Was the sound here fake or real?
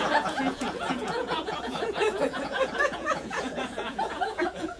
fake